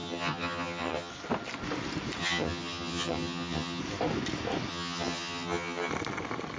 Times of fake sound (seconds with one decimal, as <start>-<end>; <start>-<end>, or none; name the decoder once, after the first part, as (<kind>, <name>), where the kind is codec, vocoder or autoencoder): 0.0-1.1 (vocoder, HiFi-GAN); 2.2-3.8; 4.7-5.9